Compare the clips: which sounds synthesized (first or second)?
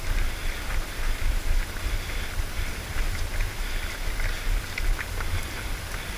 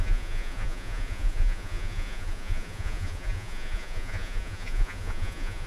second